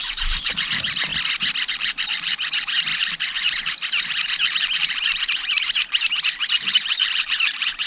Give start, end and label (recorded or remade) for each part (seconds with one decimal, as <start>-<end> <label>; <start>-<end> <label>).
0.0-1.1 remade; 1.1-1.7 recorded; 1.7-7.9 remade

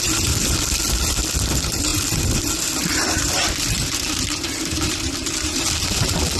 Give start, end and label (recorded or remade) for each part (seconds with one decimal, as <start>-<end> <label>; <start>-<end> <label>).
0.0-6.4 recorded

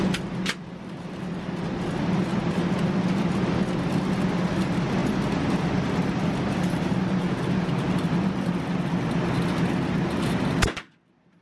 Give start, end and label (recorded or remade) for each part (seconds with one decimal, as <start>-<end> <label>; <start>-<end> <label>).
0.0-11.4 recorded

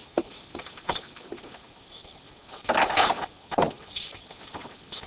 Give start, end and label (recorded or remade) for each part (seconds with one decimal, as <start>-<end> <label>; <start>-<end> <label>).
0.0-1.2 remade; 1.2-5.1 recorded